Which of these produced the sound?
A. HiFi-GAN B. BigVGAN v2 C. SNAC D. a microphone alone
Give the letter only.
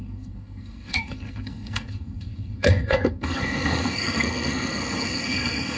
C